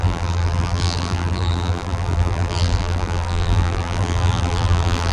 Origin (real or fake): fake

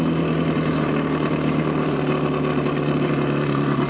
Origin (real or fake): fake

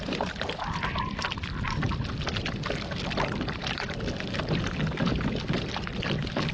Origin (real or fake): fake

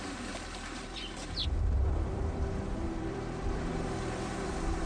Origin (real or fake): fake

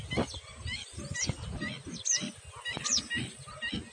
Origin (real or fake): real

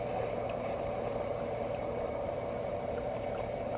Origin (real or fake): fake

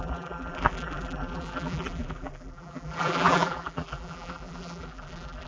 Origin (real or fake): fake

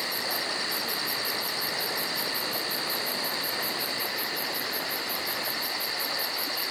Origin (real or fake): fake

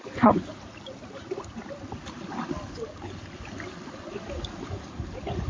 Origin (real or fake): real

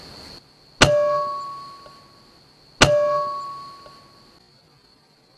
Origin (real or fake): real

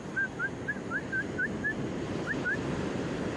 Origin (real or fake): real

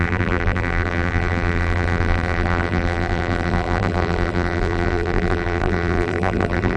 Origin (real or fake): fake